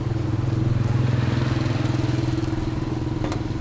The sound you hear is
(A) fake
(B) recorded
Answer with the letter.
B